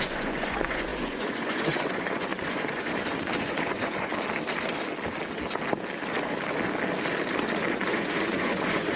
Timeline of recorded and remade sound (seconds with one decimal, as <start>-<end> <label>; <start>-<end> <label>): 0.0-4.1 remade; 4.1-7.7 recorded; 7.7-9.0 remade